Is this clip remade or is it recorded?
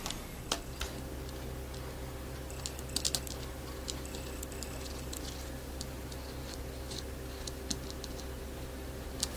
recorded